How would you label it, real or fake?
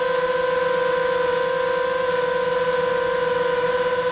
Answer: real